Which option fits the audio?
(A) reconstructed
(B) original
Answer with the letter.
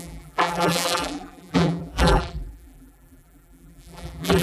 A